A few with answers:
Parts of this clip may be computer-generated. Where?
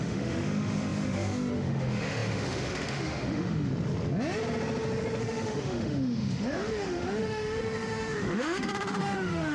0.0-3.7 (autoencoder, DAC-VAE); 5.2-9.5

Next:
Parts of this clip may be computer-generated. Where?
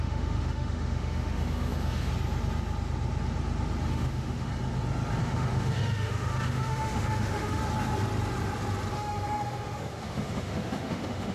0.0-2.1 (autoencoder, DAC-VAE); 3.9-4.5; 5.2-7.6; 8.9-11.3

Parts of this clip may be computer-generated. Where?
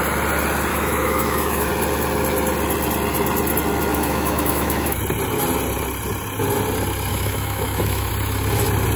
0.7-1.7 (autoencoder, DAC-VAE); 3.9-5.0; 7.1-8.1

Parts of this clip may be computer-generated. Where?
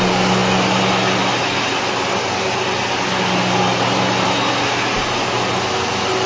none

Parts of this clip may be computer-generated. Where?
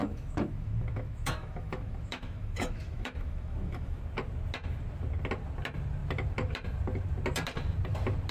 0.0-4.0 (autoencoder, DAC-VAE)